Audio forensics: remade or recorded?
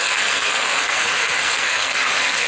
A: remade